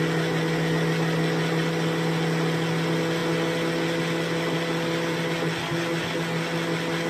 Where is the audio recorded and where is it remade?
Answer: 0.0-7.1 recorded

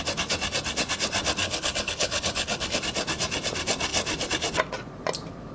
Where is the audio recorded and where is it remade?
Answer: 0.0-1.4 recorded; 1.4-2.8 remade; 2.8-5.5 recorded